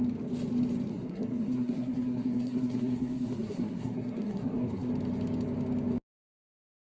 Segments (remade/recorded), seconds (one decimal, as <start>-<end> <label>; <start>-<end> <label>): 0.0-0.9 recorded; 0.9-4.9 remade; 4.9-6.9 recorded